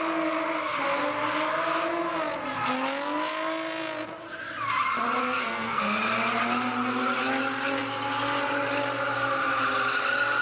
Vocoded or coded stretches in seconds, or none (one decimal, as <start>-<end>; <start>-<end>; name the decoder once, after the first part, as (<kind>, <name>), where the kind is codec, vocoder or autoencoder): 5.2-5.8 (codec, SNAC)